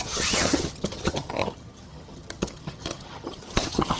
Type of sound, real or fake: fake